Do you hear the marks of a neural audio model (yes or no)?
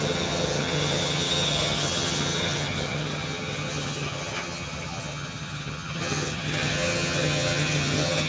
yes